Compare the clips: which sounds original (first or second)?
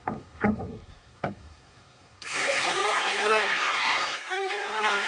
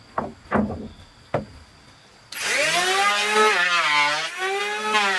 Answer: second